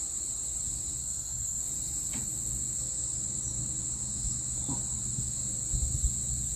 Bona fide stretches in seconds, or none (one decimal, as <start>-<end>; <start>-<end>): 0.0-1.0; 1.6-6.6